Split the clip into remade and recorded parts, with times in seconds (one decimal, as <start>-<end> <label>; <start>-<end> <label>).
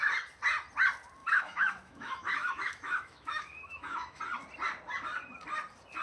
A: 0.0-1.2 recorded; 1.2-4.2 remade; 4.2-6.0 recorded